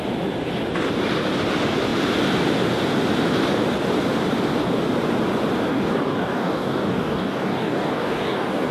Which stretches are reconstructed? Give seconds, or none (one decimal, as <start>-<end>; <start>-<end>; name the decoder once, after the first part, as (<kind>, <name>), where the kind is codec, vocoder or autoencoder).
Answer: 5.7-8.7 (codec, DAC)